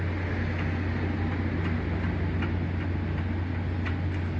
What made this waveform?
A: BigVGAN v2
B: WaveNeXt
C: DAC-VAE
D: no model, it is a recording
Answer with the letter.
D